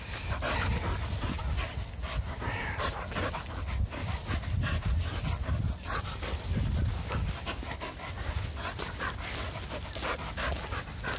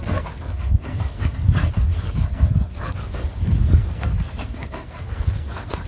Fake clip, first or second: second